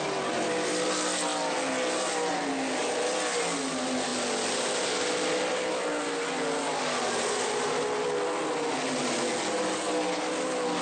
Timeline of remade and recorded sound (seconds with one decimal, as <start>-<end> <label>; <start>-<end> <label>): 0.0-10.8 recorded